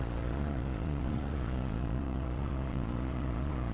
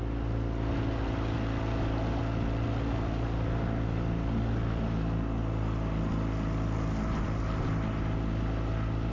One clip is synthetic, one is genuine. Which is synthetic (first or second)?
first